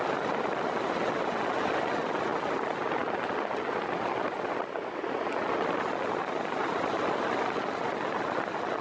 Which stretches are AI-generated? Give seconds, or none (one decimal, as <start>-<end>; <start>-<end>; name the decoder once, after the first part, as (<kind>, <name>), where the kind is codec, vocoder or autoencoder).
none